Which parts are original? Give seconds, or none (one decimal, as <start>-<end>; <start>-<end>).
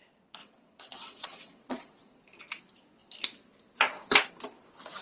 0.0-0.4; 2.2-5.0